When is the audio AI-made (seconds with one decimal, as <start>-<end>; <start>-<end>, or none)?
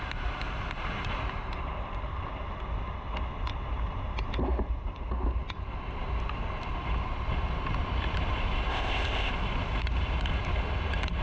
8.7-9.3